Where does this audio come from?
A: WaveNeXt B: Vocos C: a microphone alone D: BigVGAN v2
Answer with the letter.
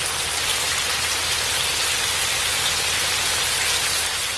C